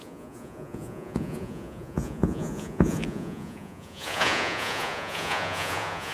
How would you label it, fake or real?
fake